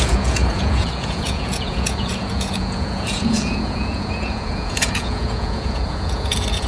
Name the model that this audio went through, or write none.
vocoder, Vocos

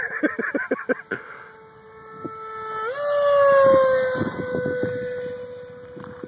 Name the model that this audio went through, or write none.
none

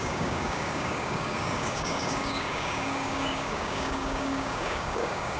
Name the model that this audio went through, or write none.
codec, DAC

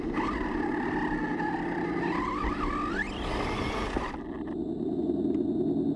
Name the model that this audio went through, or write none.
none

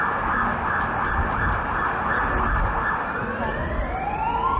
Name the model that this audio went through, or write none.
none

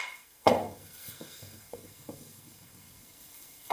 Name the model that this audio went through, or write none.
codec, SNAC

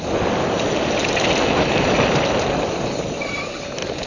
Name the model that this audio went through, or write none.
none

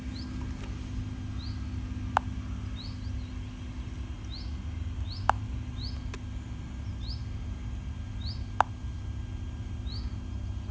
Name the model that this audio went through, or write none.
none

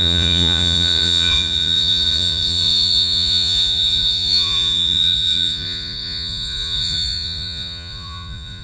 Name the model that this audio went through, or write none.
vocoder, Vocos